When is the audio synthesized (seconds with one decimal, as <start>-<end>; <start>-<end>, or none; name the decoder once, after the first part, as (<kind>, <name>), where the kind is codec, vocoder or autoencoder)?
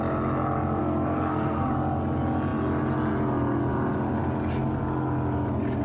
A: 0.8-1.7 (codec, SNAC)